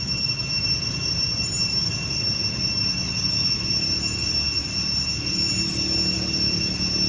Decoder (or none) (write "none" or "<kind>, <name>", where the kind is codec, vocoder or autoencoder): none